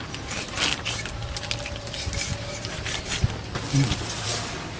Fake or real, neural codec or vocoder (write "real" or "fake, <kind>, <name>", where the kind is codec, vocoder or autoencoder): real